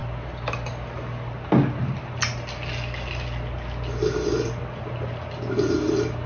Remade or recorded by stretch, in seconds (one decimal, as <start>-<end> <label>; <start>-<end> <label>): 0.0-6.3 recorded